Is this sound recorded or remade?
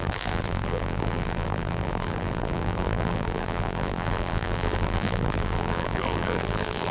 remade